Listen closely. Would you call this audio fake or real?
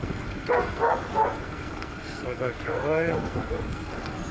fake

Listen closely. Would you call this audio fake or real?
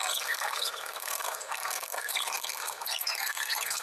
fake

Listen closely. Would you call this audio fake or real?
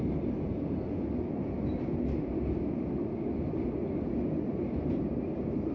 real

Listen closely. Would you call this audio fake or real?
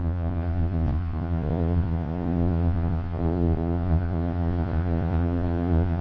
fake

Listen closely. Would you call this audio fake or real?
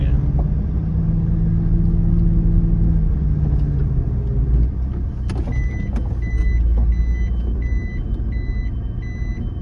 real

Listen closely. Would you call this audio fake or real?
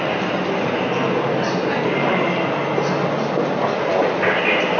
real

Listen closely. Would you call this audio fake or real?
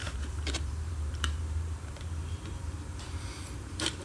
fake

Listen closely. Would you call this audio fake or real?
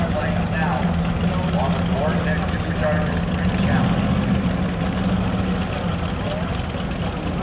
real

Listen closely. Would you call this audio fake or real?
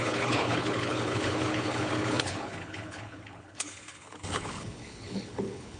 fake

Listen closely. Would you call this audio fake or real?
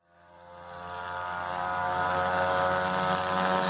real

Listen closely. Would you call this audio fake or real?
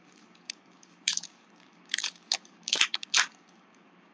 fake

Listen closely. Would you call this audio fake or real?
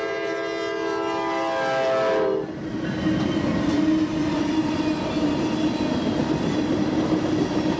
real